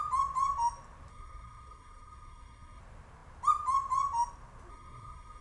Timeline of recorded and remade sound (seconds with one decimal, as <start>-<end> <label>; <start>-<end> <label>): 0.0-1.1 recorded; 1.1-2.8 remade; 2.8-4.7 recorded; 4.7-5.4 remade